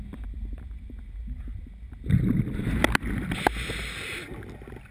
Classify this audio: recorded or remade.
recorded